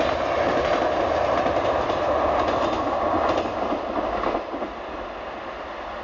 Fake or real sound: real